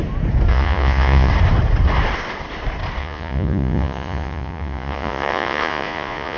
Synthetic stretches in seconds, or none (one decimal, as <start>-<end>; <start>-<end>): 0.5-1.3; 3.0-6.4